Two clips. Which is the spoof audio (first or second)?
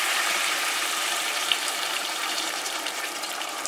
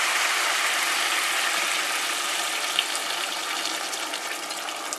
first